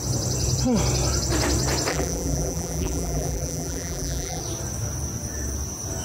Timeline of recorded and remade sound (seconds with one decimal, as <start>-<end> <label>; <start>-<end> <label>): 0.0-1.9 recorded; 1.9-4.4 remade; 4.4-6.0 recorded